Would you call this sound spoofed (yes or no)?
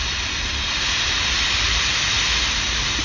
no